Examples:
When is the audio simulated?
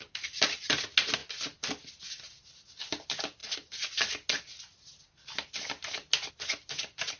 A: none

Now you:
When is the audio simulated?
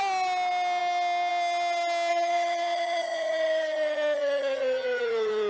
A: 2.1-5.5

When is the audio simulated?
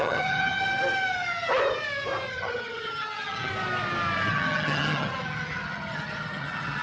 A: 0.0-0.6; 2.3-3.5; 4.3-6.8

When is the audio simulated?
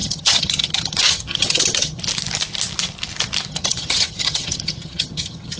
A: 0.0-2.0; 3.5-5.6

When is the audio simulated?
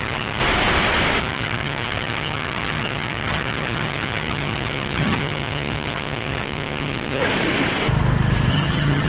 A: 0.0-0.4; 1.2-7.2; 8.5-9.1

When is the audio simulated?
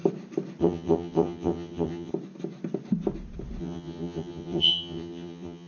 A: 0.6-2.1; 3.6-5.7